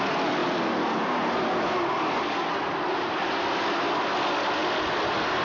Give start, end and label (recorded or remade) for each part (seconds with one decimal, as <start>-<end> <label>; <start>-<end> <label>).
0.0-5.4 recorded